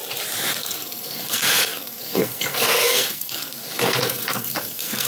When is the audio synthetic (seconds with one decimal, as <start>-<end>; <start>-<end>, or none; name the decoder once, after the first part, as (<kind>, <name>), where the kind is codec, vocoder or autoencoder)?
0.5-5.1 (codec, SNAC)